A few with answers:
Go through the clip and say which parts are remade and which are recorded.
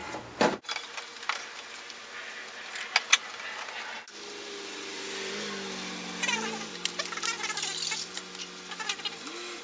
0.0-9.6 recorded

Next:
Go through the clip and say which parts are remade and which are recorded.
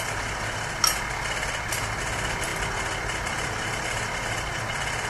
0.0-2.5 recorded; 2.5-4.6 remade; 4.6-5.1 recorded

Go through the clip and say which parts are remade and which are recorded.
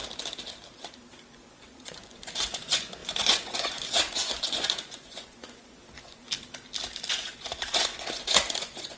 0.0-1.3 recorded; 1.3-6.2 remade; 6.2-7.1 recorded; 7.1-9.0 remade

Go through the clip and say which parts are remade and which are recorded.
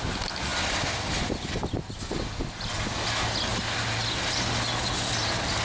0.0-5.6 recorded